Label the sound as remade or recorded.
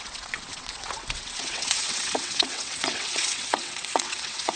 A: remade